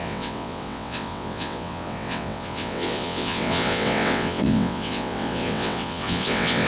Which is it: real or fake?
fake